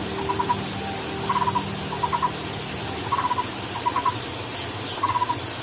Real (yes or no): yes